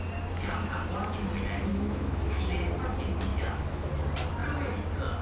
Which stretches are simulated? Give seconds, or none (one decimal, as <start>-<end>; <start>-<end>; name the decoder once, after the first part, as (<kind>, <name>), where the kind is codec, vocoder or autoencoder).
1.7-2.4 (autoencoder, DAC-VAE); 3.3-3.9